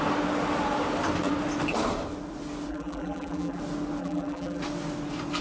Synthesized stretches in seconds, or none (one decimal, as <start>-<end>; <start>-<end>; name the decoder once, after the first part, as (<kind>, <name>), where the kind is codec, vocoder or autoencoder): 2.7-3.6 (vocoder, BigVGAN v2); 4.0-4.6